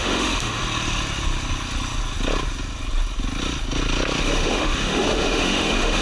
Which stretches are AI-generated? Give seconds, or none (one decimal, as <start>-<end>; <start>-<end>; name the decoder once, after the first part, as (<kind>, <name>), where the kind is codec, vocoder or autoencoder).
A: 0.0-0.6 (autoencoder, DAC-VAE); 4.2-6.0